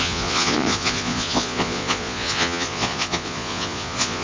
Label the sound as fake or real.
fake